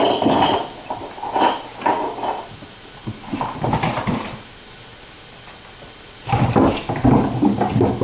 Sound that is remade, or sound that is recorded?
recorded